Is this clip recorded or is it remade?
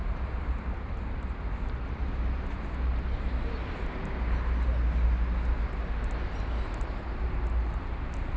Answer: recorded